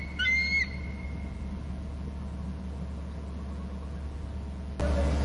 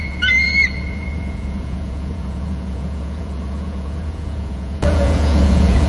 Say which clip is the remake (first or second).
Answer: second